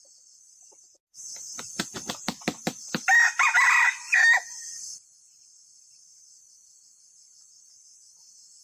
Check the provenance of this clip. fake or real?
real